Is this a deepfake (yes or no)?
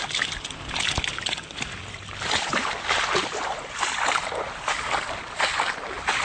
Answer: no